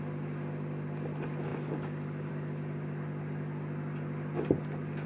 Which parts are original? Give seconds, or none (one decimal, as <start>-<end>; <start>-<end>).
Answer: 0.0-5.1

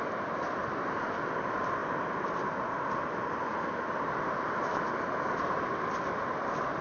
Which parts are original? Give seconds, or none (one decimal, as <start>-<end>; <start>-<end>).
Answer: 0.0-6.8

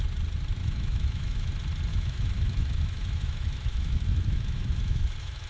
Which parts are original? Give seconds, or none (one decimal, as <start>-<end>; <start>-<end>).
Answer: 0.0-0.6; 1.5-1.9

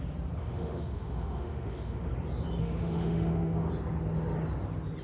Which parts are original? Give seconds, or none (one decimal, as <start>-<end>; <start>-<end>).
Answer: 0.0-0.4; 2.1-2.6; 3.7-5.0

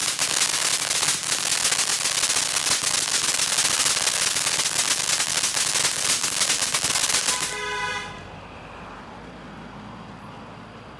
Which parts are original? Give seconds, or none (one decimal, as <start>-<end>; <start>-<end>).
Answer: 0.0-11.0

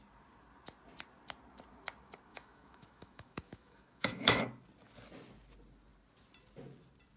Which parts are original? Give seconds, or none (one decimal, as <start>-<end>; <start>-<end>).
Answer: 0.0-2.3; 4.4-7.2

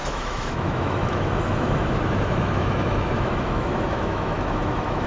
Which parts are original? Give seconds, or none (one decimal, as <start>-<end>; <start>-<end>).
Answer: none

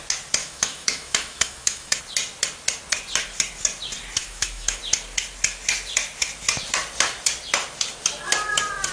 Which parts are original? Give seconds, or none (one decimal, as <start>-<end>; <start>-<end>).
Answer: 0.0-0.4; 2.0-4.2; 4.8-8.9